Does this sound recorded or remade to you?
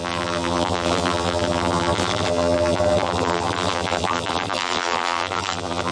remade